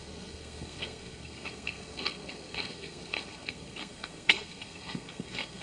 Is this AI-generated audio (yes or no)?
yes